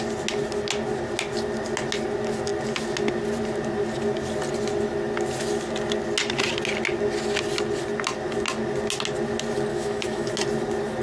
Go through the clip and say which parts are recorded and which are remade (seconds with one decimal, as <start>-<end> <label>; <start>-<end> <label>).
0.0-9.7 recorded; 9.7-10.3 remade; 10.3-11.0 recorded